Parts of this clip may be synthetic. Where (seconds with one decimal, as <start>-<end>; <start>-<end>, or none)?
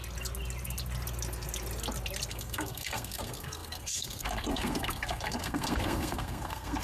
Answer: 2.3-6.8